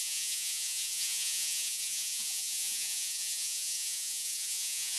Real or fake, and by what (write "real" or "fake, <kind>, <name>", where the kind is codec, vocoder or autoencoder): fake, vocoder, Vocos